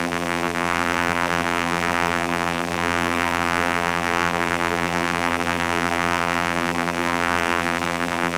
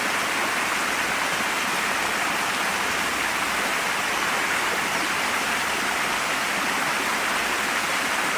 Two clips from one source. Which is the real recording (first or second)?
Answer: second